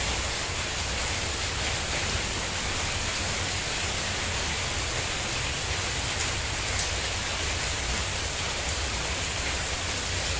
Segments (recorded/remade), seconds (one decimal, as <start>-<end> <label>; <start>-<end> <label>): 0.0-10.4 recorded